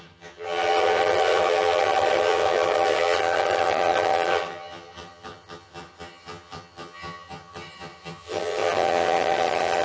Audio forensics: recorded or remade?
remade